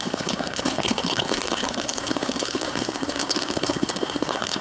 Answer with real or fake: fake